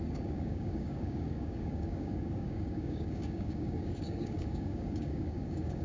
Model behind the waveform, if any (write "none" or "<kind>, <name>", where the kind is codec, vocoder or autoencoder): codec, DAC